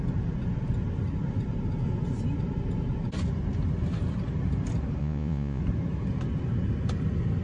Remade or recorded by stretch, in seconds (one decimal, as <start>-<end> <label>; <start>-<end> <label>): 0.0-5.0 recorded; 5.0-5.6 remade; 5.6-7.4 recorded